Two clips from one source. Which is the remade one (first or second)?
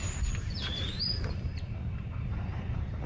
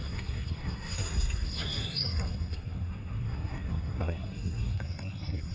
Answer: second